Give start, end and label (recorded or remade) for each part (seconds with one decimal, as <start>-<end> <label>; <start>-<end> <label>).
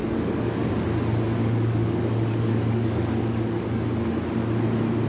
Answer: 0.0-0.7 remade; 0.7-1.4 recorded; 1.4-3.8 remade; 3.8-5.1 recorded